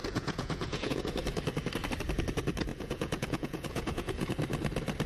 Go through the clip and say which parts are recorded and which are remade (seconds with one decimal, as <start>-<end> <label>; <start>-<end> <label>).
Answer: 0.0-1.0 remade; 1.0-2.7 recorded; 2.7-4.3 remade; 4.3-5.1 recorded